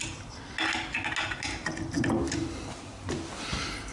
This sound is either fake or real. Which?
real